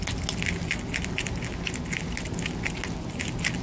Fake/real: real